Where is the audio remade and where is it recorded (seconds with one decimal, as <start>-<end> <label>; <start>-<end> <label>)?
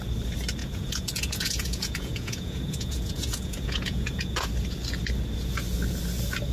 0.0-0.6 recorded; 0.6-4.5 remade; 4.5-6.5 recorded